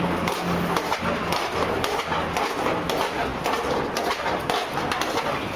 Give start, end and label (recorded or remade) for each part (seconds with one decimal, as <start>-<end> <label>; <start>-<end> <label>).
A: 0.0-1.3 recorded; 1.3-2.0 remade; 2.0-5.6 recorded